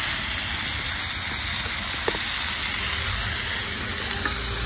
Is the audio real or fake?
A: real